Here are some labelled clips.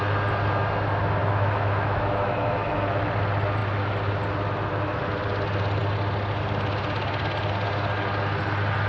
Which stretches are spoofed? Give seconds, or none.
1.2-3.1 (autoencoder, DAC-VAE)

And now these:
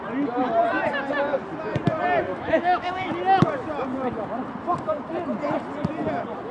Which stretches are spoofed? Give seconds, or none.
2.3-3.1 (autoencoder, DAC-VAE)

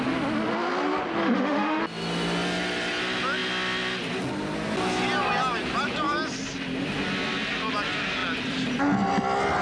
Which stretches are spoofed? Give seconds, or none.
1.2-1.8 (autoencoder, DAC-VAE)